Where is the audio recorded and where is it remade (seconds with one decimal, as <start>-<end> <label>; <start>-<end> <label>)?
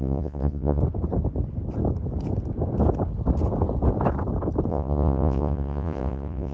0.0-0.8 remade; 0.8-4.7 recorded; 4.7-6.5 remade